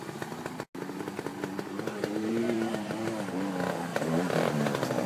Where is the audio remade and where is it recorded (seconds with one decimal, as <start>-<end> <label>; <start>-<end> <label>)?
0.0-1.3 recorded; 1.3-3.5 remade; 3.5-3.9 recorded; 3.9-5.1 remade